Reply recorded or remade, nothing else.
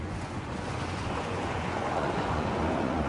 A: remade